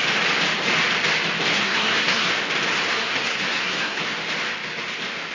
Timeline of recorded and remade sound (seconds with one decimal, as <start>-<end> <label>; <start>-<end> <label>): 0.0-1.5 recorded; 1.5-2.3 remade; 2.3-2.9 recorded; 2.9-4.0 remade; 4.0-5.3 recorded